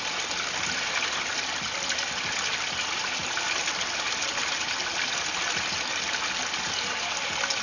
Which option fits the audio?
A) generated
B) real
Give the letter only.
B